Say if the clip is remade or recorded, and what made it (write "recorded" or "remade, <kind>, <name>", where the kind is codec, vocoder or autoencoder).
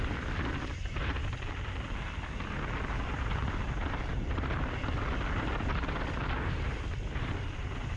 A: recorded